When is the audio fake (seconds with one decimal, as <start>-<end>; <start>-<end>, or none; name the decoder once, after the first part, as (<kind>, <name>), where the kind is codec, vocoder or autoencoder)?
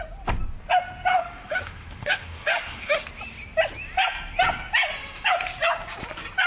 1.1-3.0 (autoencoder, DAC-VAE)